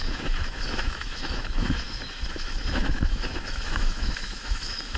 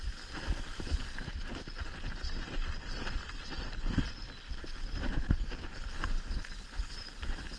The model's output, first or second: first